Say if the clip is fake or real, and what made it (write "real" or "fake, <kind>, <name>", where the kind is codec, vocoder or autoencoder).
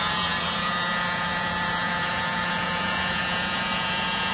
fake, vocoder, Vocos